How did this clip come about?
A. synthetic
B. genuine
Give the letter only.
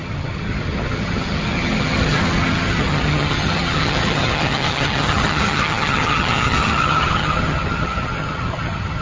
A